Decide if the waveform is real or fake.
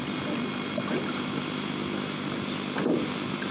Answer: real